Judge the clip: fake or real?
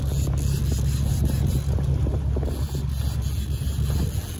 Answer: real